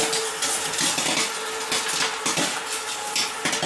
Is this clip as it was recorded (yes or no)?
yes